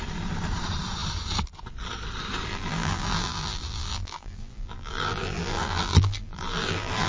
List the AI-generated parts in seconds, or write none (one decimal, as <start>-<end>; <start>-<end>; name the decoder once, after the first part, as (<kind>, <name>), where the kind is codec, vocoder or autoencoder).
2.5-7.1 (vocoder, BigVGAN v2)